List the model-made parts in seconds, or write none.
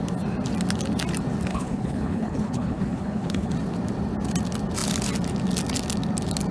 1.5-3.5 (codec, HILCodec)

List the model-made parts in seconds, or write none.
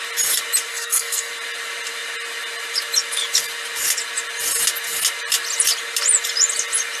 0.7-1.3 (codec, SNAC)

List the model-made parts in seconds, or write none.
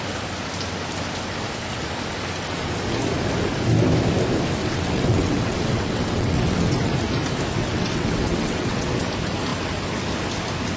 4.6-6.9 (vocoder, WaveNeXt); 7.6-9.1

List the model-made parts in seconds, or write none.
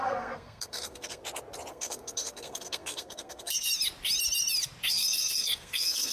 0.0-1.2 (codec, SNAC); 1.7-3.7; 4.9-6.1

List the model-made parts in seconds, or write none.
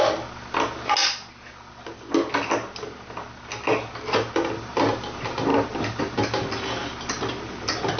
none